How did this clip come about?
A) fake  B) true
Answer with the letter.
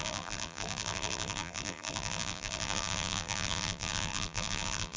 A